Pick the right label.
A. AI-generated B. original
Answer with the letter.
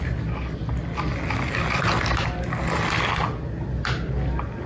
B